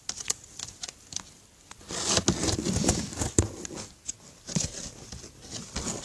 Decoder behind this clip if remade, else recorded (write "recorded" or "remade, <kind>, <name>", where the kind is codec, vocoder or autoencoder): recorded